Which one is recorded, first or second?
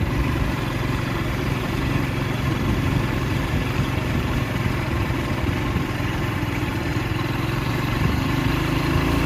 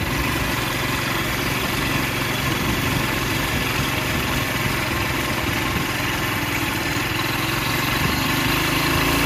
second